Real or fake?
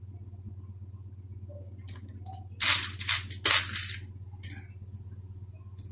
real